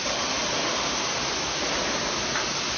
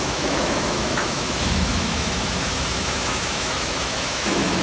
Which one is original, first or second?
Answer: first